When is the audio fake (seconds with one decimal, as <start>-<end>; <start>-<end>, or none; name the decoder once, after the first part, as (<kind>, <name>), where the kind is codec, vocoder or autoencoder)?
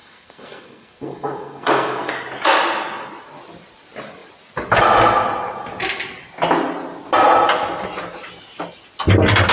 0.0-2.1 (codec, SNAC)